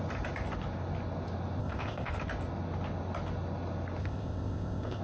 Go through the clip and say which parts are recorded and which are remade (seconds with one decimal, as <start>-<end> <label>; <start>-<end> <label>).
0.0-1.6 recorded; 1.6-2.1 remade; 2.1-4.0 recorded; 4.0-5.0 remade